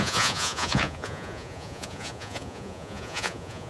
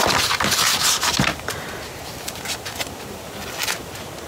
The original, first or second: second